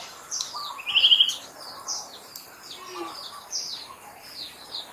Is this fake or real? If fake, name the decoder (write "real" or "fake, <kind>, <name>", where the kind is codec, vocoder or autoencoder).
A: real